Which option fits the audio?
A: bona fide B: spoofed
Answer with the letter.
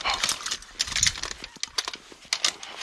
A